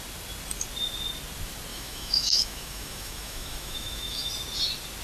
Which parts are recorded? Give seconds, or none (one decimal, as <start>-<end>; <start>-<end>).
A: 0.0-1.7; 4.3-5.0